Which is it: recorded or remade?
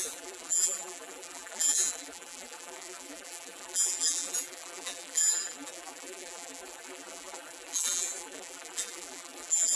remade